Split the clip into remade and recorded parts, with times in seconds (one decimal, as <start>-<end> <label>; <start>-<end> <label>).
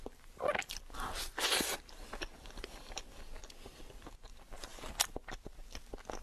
0.0-6.2 recorded